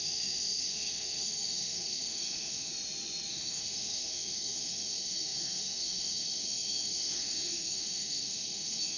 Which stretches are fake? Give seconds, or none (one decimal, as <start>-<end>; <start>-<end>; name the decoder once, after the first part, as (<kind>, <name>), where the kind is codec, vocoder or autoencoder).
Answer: 0.0-2.7 (autoencoder, DAC-VAE); 3.3-9.0